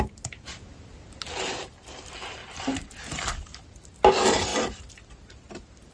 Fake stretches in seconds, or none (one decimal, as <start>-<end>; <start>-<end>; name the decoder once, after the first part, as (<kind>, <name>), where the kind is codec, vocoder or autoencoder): 4.5-5.1 (vocoder, BigVGAN v2)